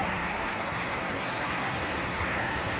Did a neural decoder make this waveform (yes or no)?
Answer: yes